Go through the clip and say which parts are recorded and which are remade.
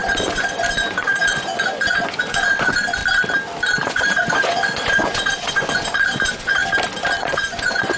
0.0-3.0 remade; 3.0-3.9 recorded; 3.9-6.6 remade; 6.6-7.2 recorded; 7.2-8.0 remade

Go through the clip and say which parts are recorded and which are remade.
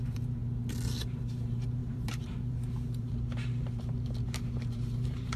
0.0-0.4 remade; 0.4-1.0 recorded; 1.0-5.4 remade